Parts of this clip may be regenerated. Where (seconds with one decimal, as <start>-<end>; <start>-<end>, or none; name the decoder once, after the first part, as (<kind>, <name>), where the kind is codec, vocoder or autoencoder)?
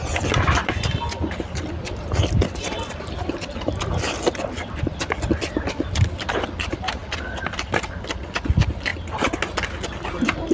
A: none